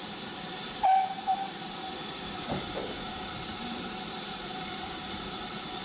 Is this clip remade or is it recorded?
remade